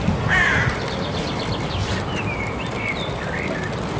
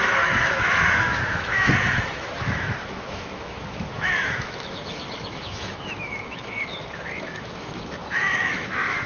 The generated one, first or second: second